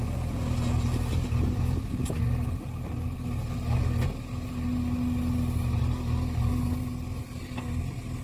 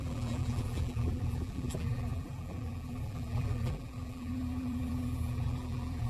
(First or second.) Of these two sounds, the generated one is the second